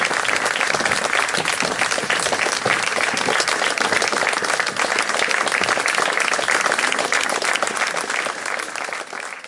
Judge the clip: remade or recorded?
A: recorded